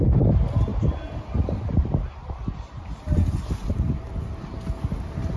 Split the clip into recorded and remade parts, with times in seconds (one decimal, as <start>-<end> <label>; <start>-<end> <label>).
0.0-0.7 recorded; 0.7-3.9 remade; 3.9-5.4 recorded